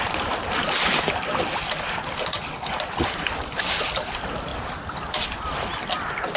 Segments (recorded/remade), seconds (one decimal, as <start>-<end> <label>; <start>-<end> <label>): 0.0-6.4 recorded